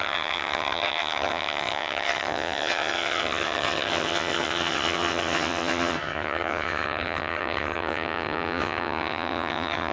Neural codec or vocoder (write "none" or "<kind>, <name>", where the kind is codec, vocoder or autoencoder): vocoder, HiFi-GAN